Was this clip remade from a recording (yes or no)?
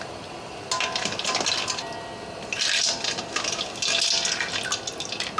no